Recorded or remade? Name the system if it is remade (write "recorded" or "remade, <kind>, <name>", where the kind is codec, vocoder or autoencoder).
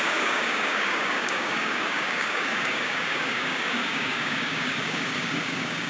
remade, codec, DAC